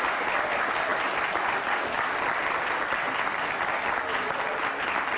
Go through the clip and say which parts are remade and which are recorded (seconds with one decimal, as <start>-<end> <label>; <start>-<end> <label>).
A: 0.0-5.2 recorded